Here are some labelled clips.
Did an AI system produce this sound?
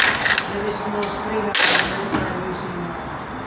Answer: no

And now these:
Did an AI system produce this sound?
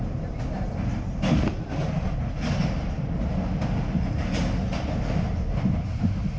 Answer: no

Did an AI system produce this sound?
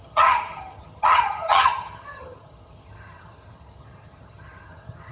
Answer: yes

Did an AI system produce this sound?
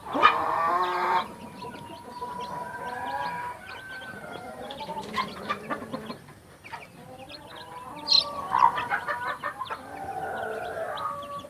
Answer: yes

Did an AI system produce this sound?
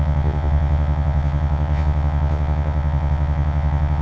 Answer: yes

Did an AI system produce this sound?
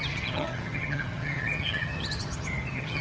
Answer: yes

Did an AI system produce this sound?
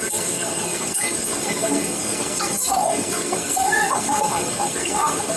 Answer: yes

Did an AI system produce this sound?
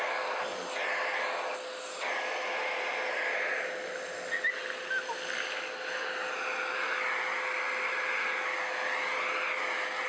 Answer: no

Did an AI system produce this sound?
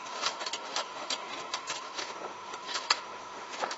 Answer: yes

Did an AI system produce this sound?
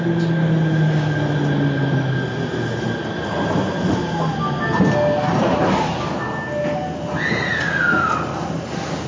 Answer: no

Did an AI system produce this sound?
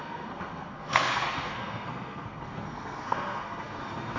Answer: yes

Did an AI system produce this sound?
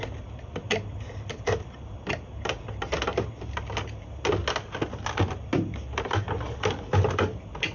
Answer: no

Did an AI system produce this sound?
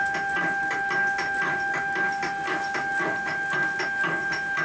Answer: no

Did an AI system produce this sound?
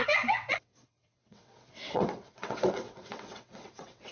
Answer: yes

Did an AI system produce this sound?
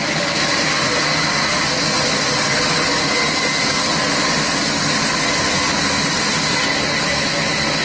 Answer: no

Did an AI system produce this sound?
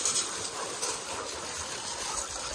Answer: no